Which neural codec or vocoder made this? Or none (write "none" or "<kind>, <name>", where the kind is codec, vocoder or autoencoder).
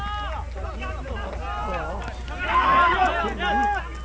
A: none